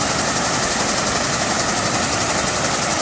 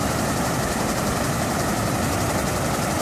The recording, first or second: first